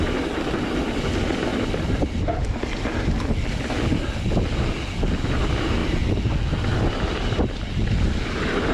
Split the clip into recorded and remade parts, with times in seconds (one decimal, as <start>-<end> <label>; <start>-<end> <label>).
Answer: 0.0-8.7 recorded

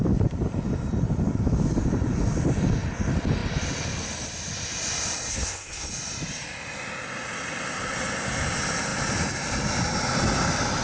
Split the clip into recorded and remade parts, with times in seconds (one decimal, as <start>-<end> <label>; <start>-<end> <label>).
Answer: 0.0-5.3 recorded; 5.3-5.9 remade; 5.9-10.8 recorded